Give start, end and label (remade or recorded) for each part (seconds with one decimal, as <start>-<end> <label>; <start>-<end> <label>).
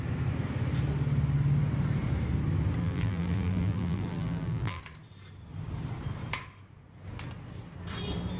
0.0-2.8 recorded; 2.8-4.8 remade; 4.8-8.4 recorded